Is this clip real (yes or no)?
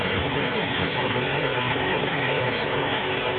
no